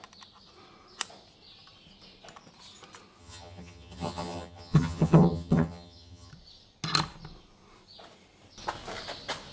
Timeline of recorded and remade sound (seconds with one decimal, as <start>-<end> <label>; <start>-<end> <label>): 0.0-3.2 recorded; 3.2-6.3 remade; 6.3-9.5 recorded